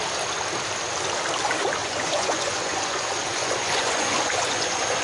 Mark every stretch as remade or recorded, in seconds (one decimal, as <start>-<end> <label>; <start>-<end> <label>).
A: 0.0-1.8 recorded; 1.8-5.0 remade